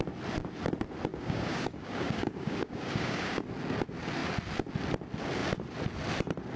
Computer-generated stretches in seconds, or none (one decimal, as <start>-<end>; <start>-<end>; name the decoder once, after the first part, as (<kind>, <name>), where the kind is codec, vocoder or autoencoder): 1.1-3.4 (codec, DAC)